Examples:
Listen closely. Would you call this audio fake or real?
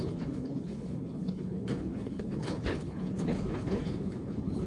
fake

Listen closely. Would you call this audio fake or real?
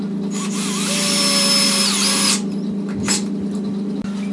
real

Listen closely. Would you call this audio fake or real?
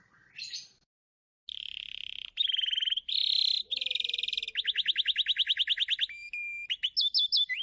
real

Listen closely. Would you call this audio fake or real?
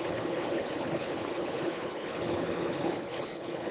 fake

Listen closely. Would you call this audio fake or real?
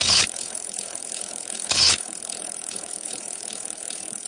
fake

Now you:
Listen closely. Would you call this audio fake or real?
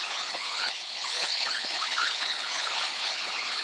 fake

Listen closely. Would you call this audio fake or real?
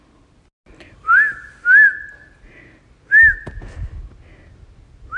real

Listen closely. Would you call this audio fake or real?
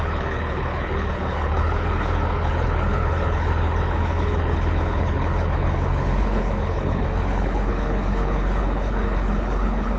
fake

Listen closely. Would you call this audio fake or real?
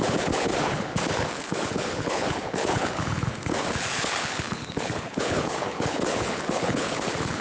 fake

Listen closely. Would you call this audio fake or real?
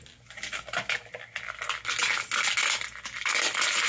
real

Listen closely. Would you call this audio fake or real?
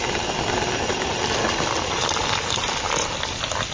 real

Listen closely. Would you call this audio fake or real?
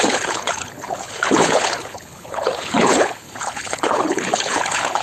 fake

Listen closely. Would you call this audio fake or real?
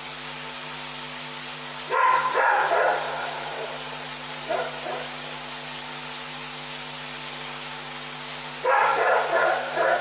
real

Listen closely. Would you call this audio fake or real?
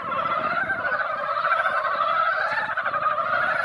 real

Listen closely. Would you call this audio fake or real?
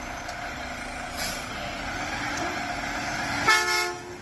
real